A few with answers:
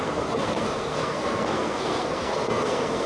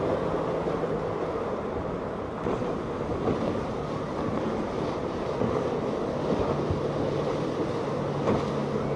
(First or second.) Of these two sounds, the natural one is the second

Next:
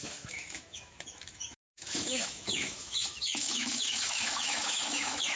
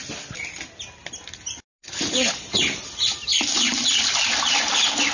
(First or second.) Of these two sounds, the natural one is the second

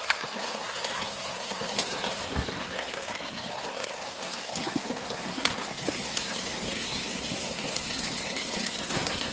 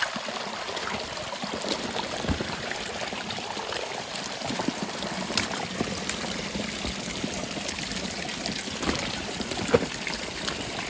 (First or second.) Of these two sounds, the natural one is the second